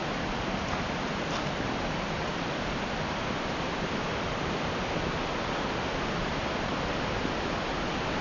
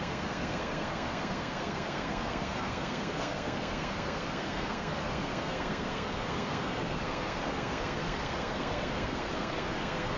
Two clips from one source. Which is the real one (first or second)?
first